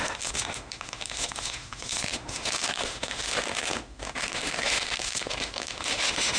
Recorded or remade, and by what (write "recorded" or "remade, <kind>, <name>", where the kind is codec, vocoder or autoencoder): remade, autoencoder, DAC-VAE